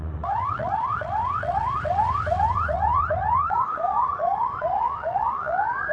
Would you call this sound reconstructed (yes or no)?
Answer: yes